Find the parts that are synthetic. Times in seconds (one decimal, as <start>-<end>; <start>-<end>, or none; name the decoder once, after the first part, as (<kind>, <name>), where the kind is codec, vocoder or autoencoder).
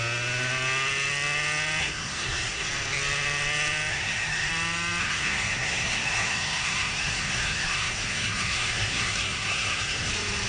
1.8-2.7 (codec, SNAC); 3.9-4.5; 5.0-10.1